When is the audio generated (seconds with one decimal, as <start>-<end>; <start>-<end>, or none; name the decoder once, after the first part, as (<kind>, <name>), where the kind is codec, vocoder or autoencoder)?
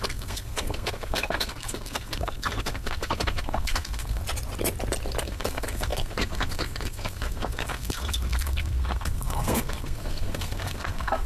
0.0-4.2 (codec, SNAC); 5.2-11.3